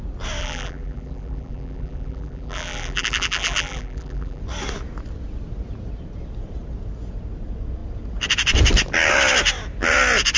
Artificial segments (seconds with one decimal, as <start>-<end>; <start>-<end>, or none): 0.4-4.4